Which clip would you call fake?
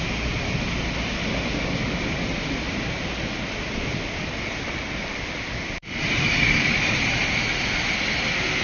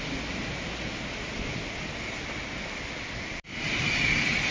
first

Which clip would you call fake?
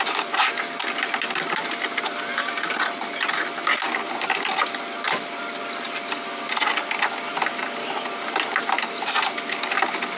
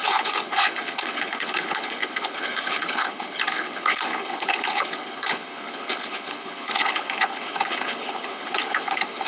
second